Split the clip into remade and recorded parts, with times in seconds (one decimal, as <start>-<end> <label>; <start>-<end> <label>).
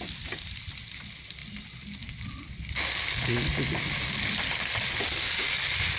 0.0-6.0 recorded